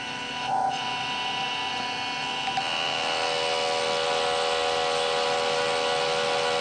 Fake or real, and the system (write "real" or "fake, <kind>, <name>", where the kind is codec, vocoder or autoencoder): real